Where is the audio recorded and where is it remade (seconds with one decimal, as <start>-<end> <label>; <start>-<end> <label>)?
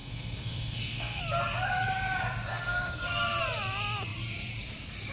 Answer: 0.0-1.2 remade; 1.2-2.5 recorded; 2.5-3.4 remade; 3.4-5.1 recorded